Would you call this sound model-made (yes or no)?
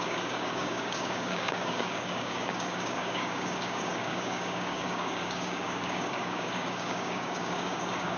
yes